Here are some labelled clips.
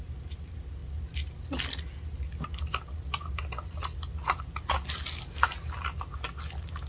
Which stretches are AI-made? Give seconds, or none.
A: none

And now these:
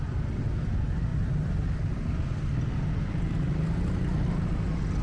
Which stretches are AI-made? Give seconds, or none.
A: none

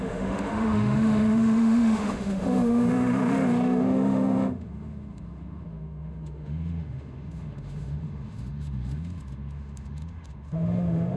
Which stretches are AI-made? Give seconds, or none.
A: 0.0-11.2 (autoencoder, DAC-VAE)

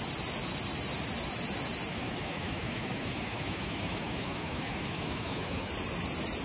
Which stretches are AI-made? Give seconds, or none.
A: 1.9-5.7 (autoencoder, DAC-VAE)

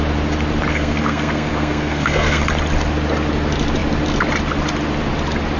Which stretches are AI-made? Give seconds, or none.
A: 0.7-2.4 (codec, SNAC)